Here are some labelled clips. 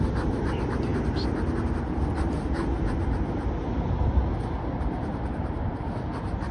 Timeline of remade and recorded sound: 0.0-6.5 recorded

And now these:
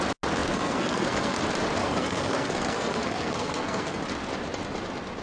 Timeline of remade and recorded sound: 0.0-0.5 recorded; 0.5-1.4 remade; 1.4-1.8 recorded; 1.8-4.0 remade; 4.0-5.2 recorded

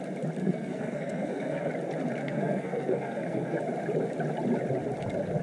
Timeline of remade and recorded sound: 0.0-0.4 recorded; 0.4-1.7 remade; 1.7-2.2 recorded; 2.2-3.6 remade; 3.6-5.4 recorded

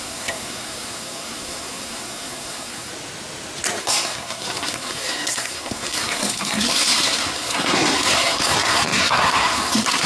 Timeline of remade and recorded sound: 0.0-2.9 remade; 2.9-3.8 recorded; 3.8-10.1 remade

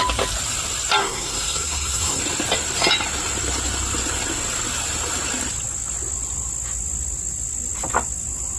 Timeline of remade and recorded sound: 0.0-1.0 recorded; 1.0-2.2 remade; 2.2-8.6 recorded

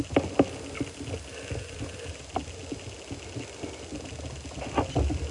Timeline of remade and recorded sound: 0.0-5.3 recorded

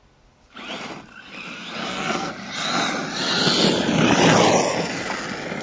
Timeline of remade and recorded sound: 0.0-1.8 recorded; 1.8-2.3 remade; 2.3-5.6 recorded